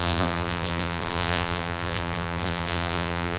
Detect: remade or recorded remade